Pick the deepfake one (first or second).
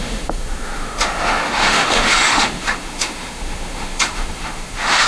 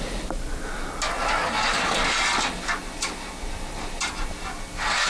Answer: first